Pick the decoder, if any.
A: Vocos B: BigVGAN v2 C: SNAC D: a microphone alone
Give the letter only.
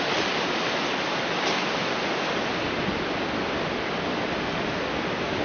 D